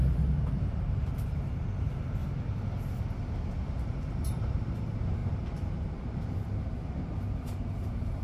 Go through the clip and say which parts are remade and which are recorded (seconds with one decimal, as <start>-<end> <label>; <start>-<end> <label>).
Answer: 0.0-2.2 remade; 2.2-3.6 recorded; 3.6-8.2 remade